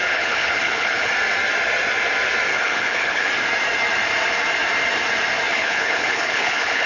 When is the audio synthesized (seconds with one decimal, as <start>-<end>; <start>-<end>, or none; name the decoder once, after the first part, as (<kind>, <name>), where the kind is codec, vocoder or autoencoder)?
0.0-1.1 (codec, HILCodec); 2.5-3.3; 5.5-6.9